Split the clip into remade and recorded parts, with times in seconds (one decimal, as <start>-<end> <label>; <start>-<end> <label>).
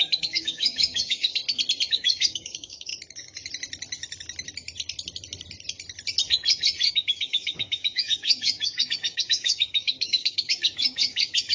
0.0-1.4 remade; 1.4-1.9 recorded; 1.9-2.9 remade; 2.9-6.9 recorded; 6.9-11.5 remade